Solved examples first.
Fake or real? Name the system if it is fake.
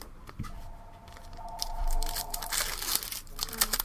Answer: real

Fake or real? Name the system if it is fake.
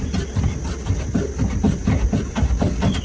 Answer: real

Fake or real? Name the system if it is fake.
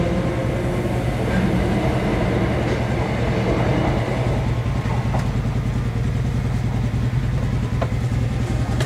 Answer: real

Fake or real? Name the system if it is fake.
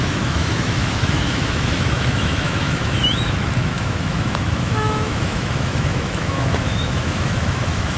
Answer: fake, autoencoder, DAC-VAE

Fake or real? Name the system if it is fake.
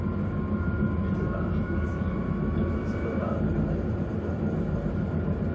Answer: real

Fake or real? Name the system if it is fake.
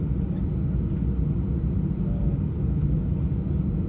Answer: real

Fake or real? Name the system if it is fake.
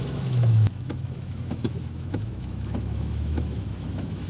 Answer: fake, autoencoder, DAC-VAE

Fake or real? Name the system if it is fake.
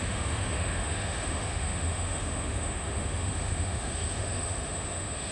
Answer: fake, autoencoder, DAC-VAE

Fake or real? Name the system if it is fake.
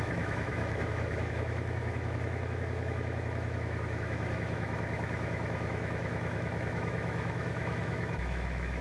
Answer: fake, autoencoder, DAC-VAE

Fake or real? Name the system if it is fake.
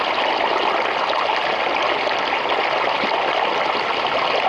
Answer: real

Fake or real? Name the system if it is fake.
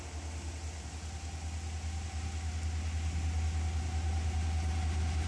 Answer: real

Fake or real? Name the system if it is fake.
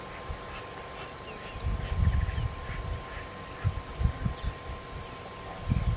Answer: real